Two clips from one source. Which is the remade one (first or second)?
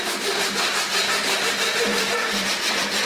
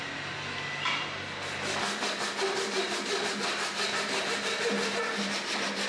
first